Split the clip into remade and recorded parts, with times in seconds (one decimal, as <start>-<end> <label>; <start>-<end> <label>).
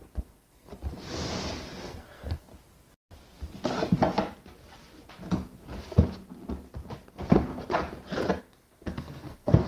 0.0-0.7 remade; 0.7-1.8 recorded; 1.8-2.5 remade; 2.5-7.1 recorded; 7.1-7.5 remade; 7.5-8.4 recorded; 8.4-9.7 remade